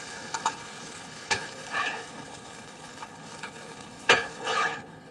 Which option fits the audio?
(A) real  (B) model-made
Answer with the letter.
B